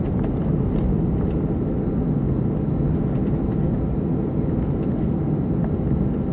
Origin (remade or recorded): recorded